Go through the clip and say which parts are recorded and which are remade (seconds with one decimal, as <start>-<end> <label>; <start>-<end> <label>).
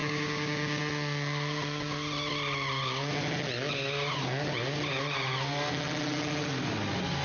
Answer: 0.0-0.8 remade; 0.8-7.2 recorded